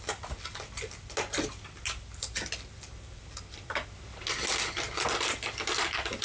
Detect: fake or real real